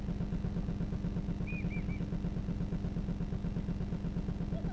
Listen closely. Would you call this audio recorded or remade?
recorded